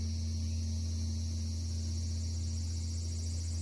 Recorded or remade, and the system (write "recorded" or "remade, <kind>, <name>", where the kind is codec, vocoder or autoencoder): recorded